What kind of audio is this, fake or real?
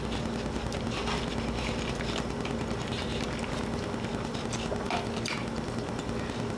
real